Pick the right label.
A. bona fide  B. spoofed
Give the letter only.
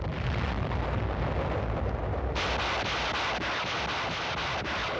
B